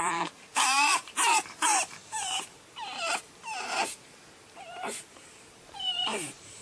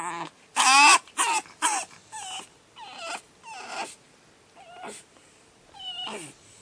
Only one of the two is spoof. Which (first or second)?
first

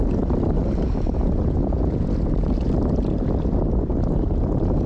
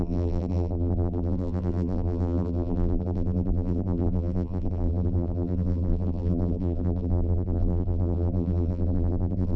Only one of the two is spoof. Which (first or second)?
second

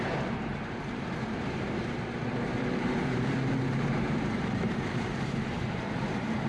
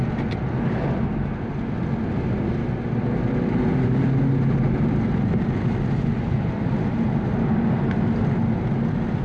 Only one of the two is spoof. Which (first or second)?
first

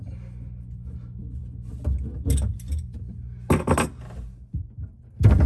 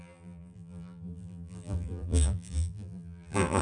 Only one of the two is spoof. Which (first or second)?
second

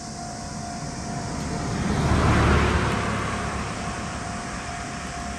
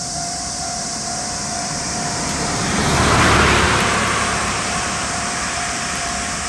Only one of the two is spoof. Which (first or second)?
second